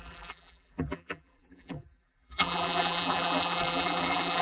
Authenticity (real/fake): fake